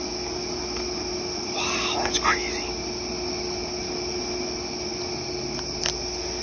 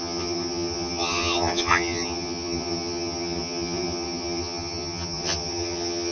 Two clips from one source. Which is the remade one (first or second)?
second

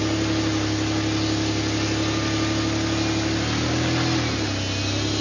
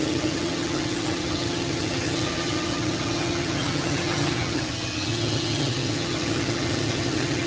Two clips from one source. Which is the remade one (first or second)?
second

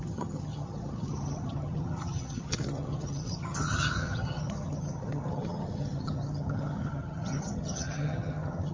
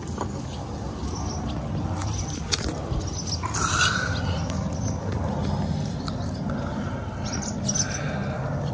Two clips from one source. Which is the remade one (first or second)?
first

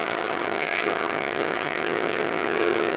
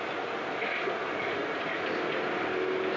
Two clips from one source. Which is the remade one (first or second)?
first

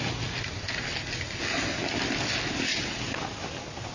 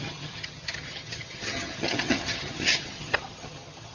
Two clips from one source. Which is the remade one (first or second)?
second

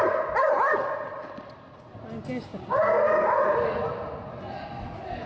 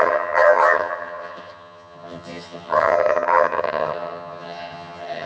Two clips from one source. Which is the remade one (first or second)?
second